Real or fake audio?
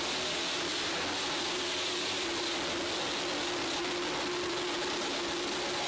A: real